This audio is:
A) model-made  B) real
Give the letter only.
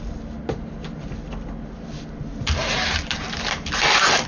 B